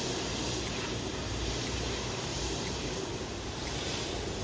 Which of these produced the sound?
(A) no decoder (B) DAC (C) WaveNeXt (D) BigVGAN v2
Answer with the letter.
D